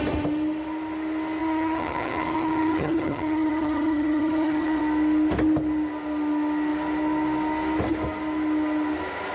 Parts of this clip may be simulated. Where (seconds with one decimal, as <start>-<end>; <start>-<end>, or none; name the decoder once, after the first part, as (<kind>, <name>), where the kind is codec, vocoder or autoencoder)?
1.4-4.8 (vocoder, HiFi-GAN)